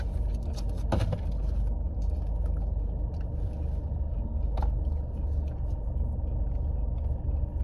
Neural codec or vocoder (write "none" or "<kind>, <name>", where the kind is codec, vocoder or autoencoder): none